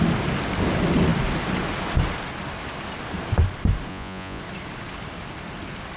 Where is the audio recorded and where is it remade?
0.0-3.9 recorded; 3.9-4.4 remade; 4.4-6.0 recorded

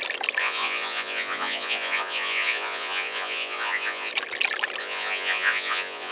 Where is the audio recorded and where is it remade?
0.0-0.4 recorded; 0.4-4.1 remade; 4.1-4.8 recorded; 4.8-6.1 remade

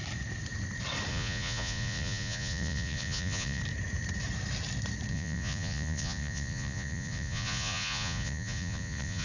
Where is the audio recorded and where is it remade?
0.0-1.1 recorded; 1.1-3.6 remade; 3.6-5.1 recorded; 5.1-9.2 remade